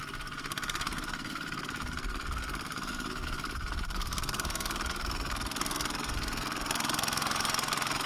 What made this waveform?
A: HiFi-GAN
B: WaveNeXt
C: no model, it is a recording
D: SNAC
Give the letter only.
D